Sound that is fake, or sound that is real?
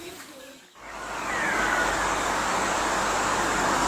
fake